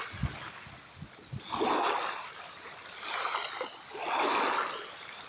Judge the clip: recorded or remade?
recorded